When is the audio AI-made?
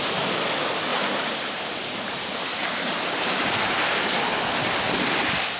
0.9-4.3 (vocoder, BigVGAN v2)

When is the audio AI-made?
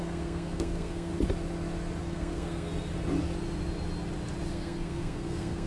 0.0-1.1 (codec, SNAC); 2.0-2.7; 4.5-5.7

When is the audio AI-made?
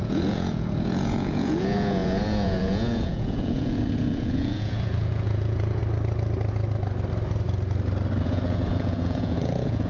0.0-5.8 (vocoder, Vocos); 8.2-9.9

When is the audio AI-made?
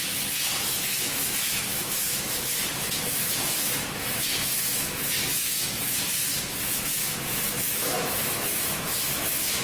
0.0-9.6 (autoencoder, DAC-VAE)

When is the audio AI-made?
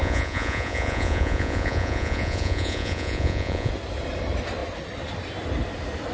0.0-3.7 (vocoder, Vocos)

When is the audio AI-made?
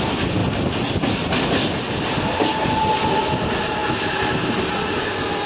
none